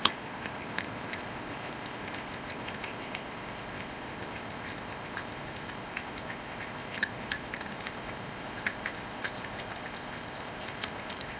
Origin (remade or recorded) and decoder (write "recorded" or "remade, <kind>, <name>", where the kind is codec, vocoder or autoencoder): remade, codec, ZipCodec